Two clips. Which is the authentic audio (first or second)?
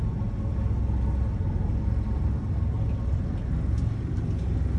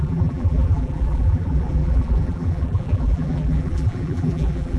first